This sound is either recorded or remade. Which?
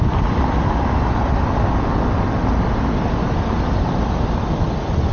recorded